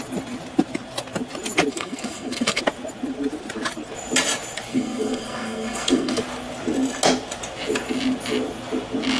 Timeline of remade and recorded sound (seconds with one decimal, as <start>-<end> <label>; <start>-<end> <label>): 0.0-1.7 recorded; 1.7-2.6 remade; 2.6-4.7 recorded; 4.7-6.2 remade; 6.2-9.2 recorded